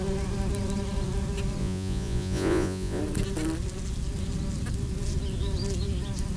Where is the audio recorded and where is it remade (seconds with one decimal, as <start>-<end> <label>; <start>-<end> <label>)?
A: 0.0-1.6 recorded; 1.6-3.0 remade; 3.0-6.4 recorded